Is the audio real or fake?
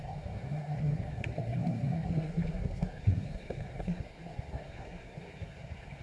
fake